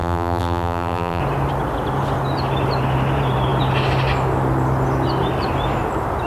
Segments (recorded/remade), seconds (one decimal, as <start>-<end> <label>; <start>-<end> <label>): 0.0-1.2 remade; 1.2-6.3 recorded

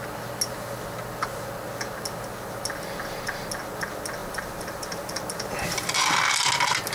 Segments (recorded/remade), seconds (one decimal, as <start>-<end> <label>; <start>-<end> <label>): 0.0-4.2 recorded; 4.2-5.2 remade; 5.2-6.9 recorded

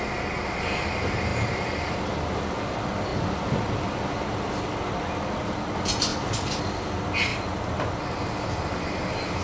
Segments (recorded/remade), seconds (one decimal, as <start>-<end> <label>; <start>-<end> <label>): 0.0-1.3 recorded; 1.3-2.1 remade; 2.1-3.1 recorded; 3.1-4.5 remade; 4.5-6.1 recorded; 6.1-6.6 remade; 6.6-7.3 recorded; 7.3-8.0 remade; 8.0-9.4 recorded

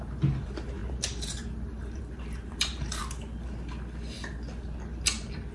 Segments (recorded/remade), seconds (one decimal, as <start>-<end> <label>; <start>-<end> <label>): 0.0-3.0 remade; 3.0-5.5 recorded

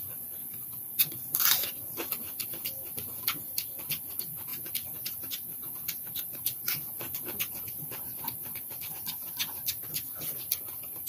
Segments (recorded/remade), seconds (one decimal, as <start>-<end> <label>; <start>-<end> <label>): 0.0-4.5 recorded; 4.5-8.2 remade; 8.2-11.1 recorded

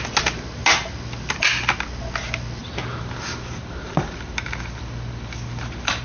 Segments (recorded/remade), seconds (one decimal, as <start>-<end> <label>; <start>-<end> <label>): 0.0-2.6 recorded; 2.6-3.9 remade; 3.9-6.0 recorded

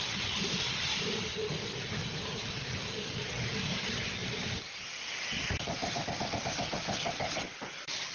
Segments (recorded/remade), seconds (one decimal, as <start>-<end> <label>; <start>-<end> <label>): 0.0-2.0 recorded; 2.0-2.7 remade; 2.7-4.2 recorded; 4.2-4.8 remade; 4.8-8.1 recorded

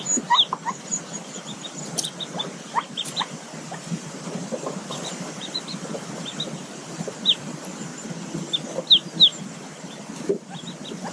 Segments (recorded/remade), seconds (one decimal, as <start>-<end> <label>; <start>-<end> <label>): 0.0-7.9 remade; 7.9-11.1 recorded